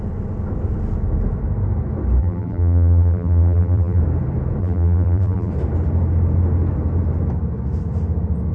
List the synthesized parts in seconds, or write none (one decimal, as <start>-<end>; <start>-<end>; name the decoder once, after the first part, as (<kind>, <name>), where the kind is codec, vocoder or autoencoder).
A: 2.2-4.0 (vocoder, BigVGAN v2); 4.6-5.5